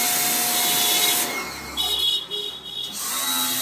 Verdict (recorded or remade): recorded